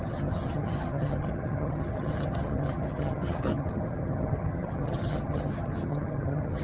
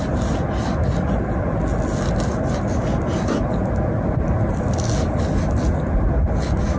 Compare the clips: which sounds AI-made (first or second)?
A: first